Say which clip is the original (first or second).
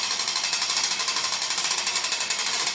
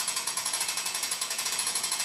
first